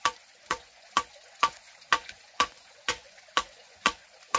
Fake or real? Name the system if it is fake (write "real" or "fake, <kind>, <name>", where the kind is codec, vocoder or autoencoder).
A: fake, vocoder, Vocos